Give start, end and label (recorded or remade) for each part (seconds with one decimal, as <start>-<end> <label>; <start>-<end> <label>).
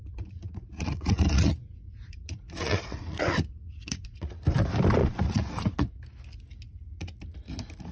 0.0-4.4 remade; 4.4-5.0 recorded; 5.0-5.9 remade; 5.9-7.9 recorded